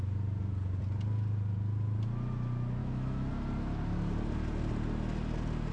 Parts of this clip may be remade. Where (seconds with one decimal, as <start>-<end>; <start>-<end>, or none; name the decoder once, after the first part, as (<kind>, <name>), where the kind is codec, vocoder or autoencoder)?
2.8-3.3 (autoencoder, DAC-VAE)